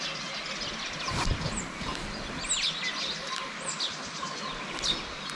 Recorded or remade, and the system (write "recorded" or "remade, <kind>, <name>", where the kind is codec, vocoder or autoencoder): recorded